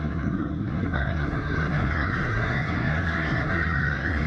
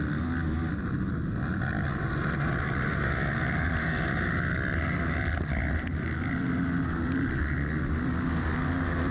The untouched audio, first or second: second